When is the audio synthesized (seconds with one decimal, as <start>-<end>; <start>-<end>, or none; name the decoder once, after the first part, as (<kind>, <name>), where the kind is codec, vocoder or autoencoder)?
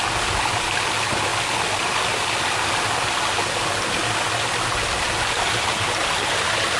none